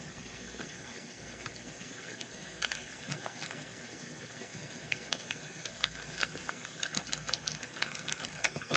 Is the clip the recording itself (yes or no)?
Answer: no